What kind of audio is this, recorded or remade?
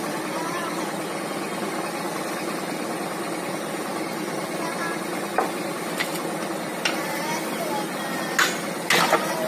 recorded